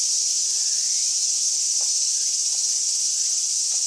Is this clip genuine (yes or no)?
yes